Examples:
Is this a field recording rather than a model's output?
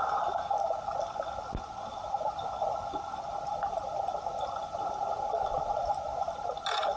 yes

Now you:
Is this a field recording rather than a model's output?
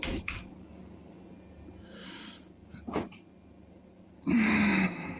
yes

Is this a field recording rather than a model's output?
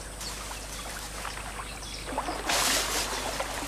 yes